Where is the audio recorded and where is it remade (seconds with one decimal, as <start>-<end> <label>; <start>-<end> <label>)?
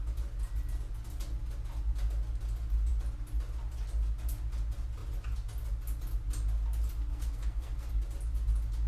0.0-7.1 recorded; 7.1-7.9 remade; 7.9-8.9 recorded